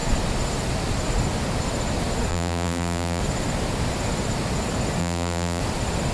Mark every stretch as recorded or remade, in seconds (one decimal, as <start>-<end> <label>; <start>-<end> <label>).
0.0-2.3 recorded; 2.3-3.2 remade; 3.2-5.0 recorded; 5.0-5.6 remade; 5.6-6.1 recorded